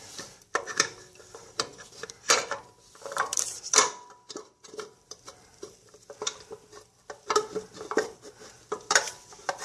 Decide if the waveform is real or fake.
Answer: fake